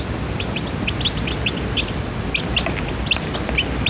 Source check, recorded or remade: recorded